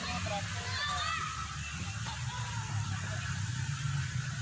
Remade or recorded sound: recorded